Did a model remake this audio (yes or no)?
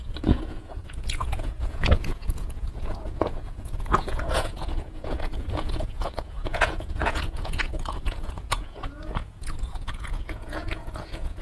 yes